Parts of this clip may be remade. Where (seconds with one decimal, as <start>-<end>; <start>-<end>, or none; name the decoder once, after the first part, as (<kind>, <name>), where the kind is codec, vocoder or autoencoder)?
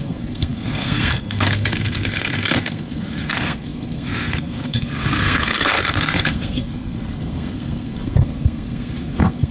0.0-9.5 (codec, SNAC)